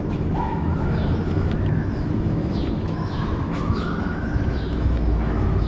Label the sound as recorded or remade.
remade